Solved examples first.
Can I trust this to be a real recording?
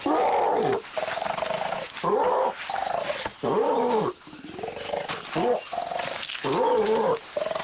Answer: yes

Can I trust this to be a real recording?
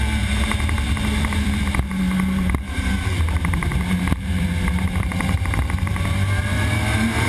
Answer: no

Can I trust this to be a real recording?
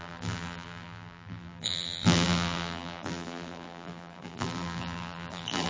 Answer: no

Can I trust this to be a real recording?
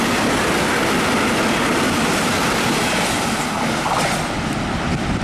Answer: yes